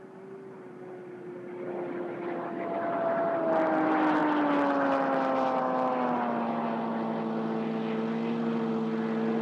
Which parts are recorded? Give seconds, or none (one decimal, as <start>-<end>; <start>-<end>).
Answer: 0.0-9.4